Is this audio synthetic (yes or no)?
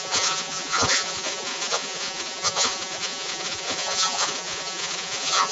yes